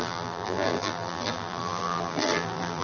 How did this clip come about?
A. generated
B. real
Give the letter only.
A